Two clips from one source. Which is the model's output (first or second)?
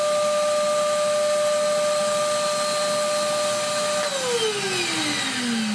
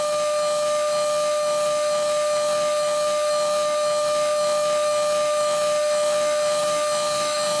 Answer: second